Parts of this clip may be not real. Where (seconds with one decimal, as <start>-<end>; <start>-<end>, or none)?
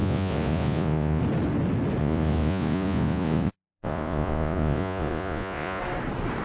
0.0-1.2; 2.0-5.8